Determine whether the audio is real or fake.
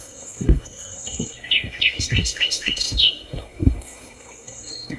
fake